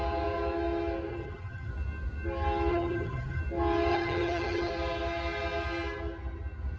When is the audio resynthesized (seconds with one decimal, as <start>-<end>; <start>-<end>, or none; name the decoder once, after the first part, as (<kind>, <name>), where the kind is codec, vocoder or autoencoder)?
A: 1.1-1.7 (vocoder, HiFi-GAN); 2.7-3.4; 3.9-4.7